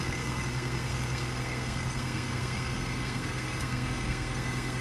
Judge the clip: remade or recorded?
remade